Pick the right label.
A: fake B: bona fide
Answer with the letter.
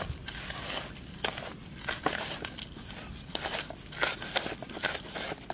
B